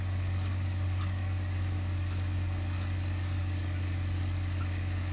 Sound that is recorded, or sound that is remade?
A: remade